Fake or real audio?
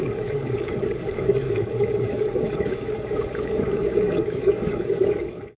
fake